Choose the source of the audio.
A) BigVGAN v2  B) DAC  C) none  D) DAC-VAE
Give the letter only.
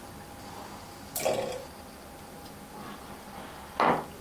C